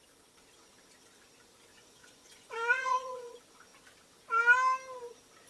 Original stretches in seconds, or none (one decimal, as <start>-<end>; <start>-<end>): 0.0-1.7; 3.3-5.5